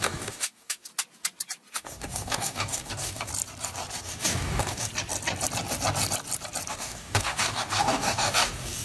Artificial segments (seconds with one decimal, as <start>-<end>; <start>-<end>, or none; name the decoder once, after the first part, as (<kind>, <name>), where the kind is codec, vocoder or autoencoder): 0.0-0.9 (codec, DAC); 1.7-3.3; 4.0-4.9; 6.7-8.8